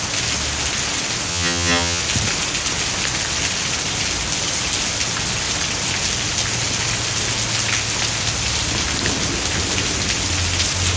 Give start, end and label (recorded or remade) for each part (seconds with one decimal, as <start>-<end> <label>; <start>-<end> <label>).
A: 0.0-1.3 recorded; 1.3-2.0 remade; 2.0-11.0 recorded